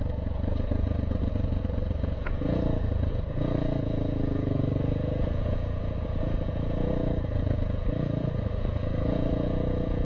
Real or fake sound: fake